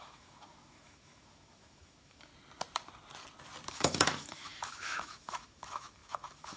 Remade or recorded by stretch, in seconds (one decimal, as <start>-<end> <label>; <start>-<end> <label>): 0.0-2.3 remade; 2.3-3.7 recorded; 3.7-6.6 remade